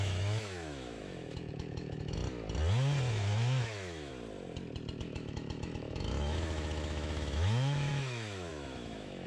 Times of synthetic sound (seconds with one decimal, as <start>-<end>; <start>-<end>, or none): 0.0-2.2; 3.1-4.1; 5.0-9.3